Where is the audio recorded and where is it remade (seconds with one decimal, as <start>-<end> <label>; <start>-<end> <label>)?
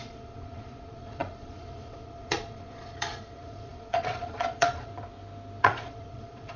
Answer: 0.0-4.9 remade; 4.9-5.6 recorded; 5.6-6.6 remade